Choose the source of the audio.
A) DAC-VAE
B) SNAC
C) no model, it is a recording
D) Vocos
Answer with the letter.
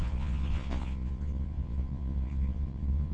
D